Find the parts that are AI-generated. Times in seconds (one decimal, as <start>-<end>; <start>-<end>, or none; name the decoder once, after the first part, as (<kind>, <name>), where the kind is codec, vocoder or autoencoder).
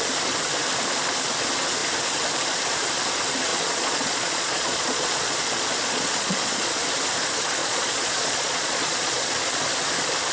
3.5-6.7 (vocoder, Vocos); 7.6-9.3